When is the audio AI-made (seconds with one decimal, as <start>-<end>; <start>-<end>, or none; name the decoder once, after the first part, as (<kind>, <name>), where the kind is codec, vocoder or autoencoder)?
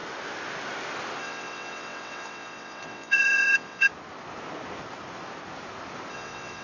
1.2-3.9 (vocoder, WaveNeXt); 6.1-6.6